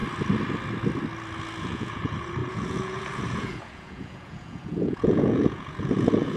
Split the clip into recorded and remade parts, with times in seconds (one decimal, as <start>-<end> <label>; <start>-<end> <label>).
0.0-1.6 recorded; 1.6-6.4 remade